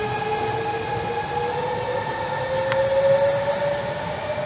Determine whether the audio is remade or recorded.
recorded